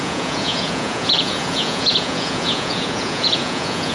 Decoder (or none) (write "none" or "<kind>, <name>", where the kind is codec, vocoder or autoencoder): vocoder, Vocos